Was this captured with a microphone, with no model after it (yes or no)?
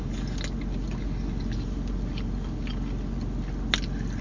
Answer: yes